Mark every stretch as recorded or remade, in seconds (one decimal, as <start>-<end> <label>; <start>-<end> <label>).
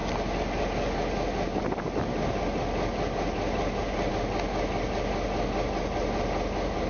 0.0-6.9 recorded